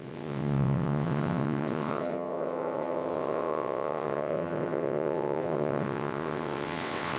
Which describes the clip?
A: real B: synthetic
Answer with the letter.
B